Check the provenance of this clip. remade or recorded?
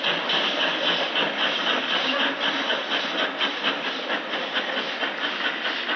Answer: recorded